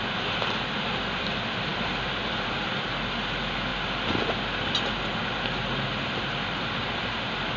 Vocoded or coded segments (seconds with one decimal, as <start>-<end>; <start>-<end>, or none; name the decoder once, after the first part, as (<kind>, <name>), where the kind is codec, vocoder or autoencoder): none